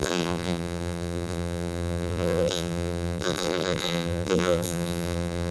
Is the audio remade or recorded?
remade